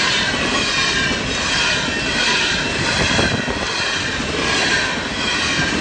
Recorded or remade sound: recorded